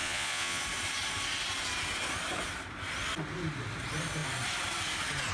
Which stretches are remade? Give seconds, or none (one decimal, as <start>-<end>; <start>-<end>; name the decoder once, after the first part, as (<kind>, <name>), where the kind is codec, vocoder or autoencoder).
0.0-0.6 (vocoder, Vocos)